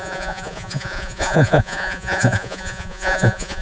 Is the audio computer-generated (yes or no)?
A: yes